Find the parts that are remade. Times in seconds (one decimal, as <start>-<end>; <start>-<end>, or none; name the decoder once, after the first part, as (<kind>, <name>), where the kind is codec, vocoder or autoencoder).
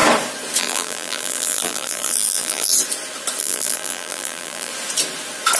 0.6-2.7 (vocoder, BigVGAN v2); 3.4-4.7